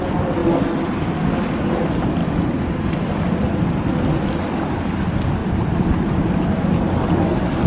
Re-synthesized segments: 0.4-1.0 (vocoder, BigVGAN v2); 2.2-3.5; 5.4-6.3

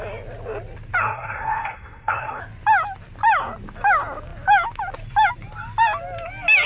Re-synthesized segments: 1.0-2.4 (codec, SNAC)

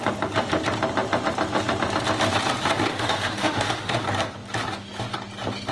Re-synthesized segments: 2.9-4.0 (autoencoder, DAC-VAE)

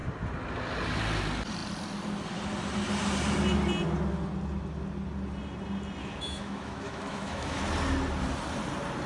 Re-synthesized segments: 6.0-7.6 (autoencoder, DAC-VAE)